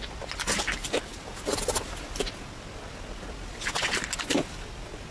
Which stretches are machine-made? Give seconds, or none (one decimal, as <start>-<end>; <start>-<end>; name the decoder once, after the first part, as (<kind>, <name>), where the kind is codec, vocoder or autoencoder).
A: none